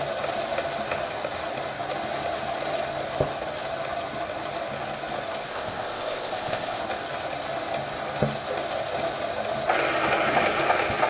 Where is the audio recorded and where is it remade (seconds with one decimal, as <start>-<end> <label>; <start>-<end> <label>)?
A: 0.0-5.5 recorded; 5.5-6.8 remade; 6.8-11.1 recorded